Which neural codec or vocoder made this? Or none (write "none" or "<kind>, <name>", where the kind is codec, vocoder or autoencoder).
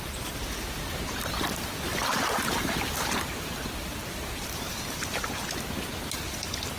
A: none